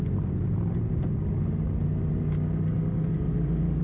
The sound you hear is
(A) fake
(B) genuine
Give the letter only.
B